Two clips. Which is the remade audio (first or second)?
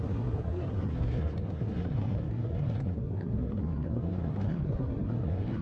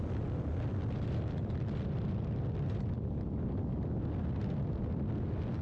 first